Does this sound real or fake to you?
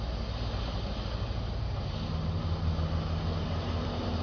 real